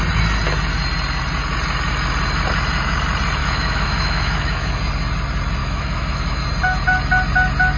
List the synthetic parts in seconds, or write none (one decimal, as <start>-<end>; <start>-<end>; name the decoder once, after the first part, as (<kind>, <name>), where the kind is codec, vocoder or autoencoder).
3.4-4.8 (autoencoder, DAC-VAE); 5.6-6.4